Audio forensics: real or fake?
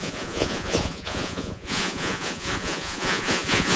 fake